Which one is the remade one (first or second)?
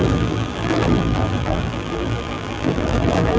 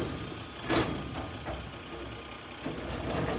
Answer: first